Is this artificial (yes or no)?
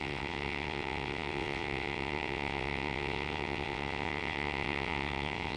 yes